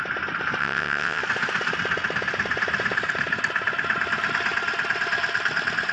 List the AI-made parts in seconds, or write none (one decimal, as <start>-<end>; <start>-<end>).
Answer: 0.6-1.2